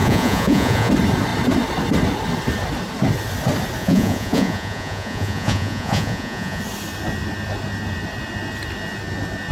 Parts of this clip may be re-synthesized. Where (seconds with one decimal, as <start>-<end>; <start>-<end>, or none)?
0.0-0.9; 3.8-6.6